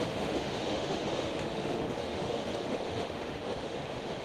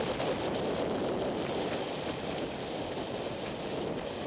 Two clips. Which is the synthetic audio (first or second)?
first